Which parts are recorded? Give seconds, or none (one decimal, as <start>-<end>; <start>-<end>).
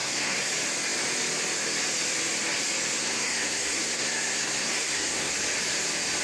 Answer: 0.5-3.0; 5.3-6.2